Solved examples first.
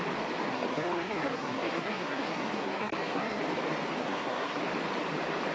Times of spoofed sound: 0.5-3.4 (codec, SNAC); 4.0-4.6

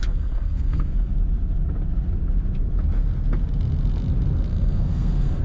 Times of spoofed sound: 0.0-1.1 (codec, SNAC); 4.5-5.4

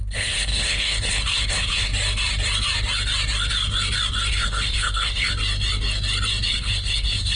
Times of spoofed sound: 0.0-1.9 (codec, HILCodec); 4.3-5.3; 6.5-7.4